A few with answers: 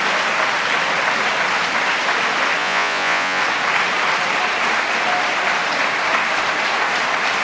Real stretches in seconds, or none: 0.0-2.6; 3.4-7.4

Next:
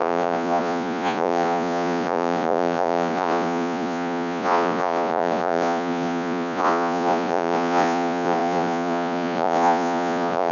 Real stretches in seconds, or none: none

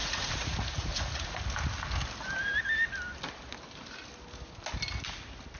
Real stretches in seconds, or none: 1.4-5.6

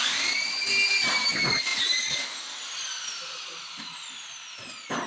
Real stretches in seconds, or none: 0.0-5.1